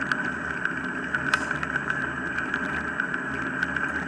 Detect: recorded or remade recorded